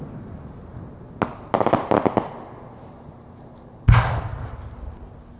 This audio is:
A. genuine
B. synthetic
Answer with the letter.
A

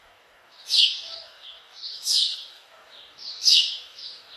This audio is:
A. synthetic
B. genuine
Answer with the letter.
A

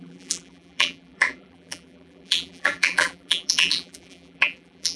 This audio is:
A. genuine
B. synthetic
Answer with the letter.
B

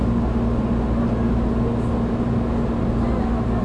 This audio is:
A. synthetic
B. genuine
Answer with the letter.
B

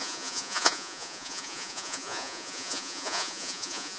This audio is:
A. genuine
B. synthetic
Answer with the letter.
B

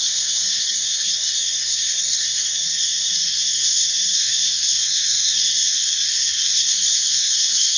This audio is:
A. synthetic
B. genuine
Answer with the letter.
A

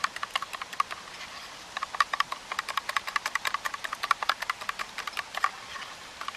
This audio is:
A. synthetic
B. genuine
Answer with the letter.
B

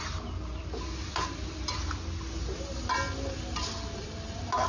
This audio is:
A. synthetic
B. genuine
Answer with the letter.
B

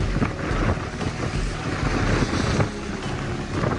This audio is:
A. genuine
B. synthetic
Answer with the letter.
A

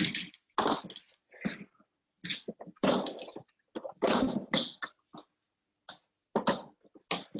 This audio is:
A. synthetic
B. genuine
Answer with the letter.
B